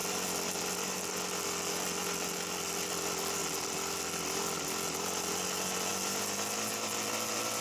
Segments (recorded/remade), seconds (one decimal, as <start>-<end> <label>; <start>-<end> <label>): 0.0-7.6 recorded